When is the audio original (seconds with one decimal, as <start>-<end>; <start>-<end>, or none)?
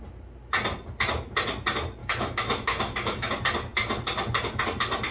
0.0-2.0; 3.3-5.1